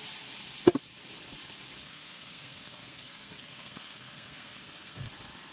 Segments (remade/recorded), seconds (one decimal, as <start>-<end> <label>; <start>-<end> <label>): 0.0-1.8 recorded; 1.8-5.1 remade; 5.1-5.5 recorded